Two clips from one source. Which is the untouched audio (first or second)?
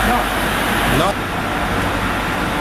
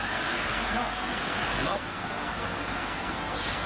first